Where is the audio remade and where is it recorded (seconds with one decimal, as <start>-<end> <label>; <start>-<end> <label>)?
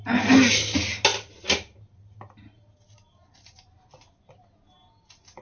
0.0-5.4 recorded